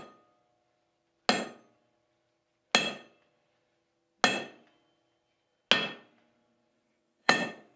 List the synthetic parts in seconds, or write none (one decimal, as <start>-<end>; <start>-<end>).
6.7-7.8